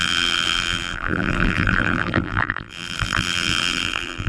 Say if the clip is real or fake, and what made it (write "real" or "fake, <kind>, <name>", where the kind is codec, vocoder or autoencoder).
fake, vocoder, BigVGAN v2